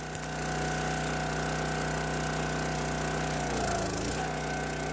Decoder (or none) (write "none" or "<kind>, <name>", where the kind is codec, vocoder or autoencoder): none